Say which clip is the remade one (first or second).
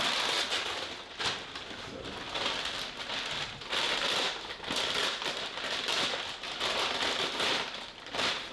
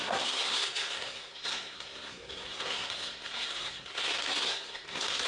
second